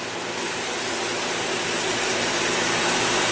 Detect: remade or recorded recorded